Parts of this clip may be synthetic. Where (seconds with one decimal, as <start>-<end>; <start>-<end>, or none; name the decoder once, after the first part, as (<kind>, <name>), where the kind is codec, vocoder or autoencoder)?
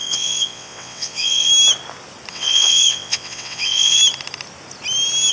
0.0-1.5 (vocoder, WaveNeXt); 2.3-4.0